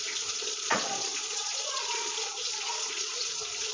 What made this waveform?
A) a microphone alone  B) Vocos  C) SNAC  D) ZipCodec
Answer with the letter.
B